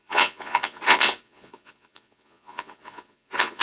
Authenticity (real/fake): fake